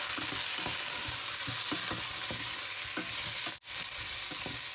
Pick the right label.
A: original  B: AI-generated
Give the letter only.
A